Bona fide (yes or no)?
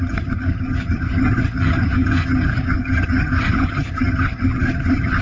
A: no